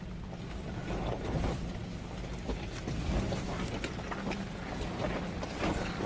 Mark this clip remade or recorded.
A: recorded